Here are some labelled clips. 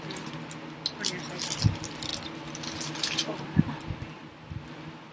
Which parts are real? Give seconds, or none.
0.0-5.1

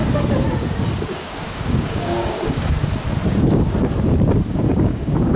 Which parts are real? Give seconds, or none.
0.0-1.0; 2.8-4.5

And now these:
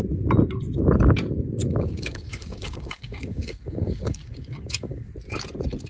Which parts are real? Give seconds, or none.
0.0-1.6; 5.1-5.9

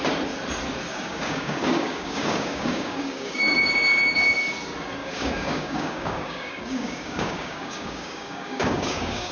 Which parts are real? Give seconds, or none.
0.0-0.9; 3.7-5.0